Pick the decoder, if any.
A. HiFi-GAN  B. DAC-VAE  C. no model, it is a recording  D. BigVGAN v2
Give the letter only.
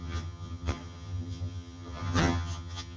A